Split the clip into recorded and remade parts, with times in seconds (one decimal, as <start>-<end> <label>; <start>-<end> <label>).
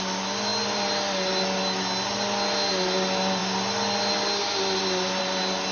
0.0-5.7 recorded